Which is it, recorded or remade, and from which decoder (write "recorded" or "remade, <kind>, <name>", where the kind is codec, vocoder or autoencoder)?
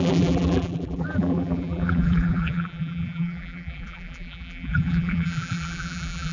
remade, vocoder, BigVGAN v2